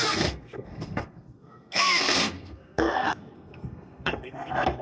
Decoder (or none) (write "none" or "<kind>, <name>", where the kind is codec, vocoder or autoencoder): codec, SNAC